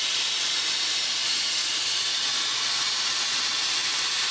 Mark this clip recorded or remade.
recorded